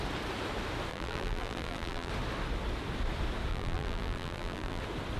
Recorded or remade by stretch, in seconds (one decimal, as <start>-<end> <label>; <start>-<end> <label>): 0.0-0.9 recorded; 0.9-2.1 remade; 2.1-3.5 recorded; 3.5-4.8 remade; 4.8-5.2 recorded